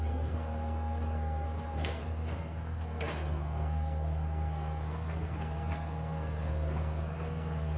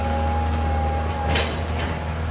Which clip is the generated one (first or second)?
first